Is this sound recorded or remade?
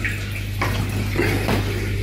recorded